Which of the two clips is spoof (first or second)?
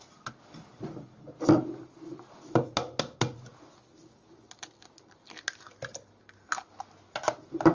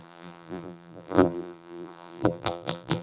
second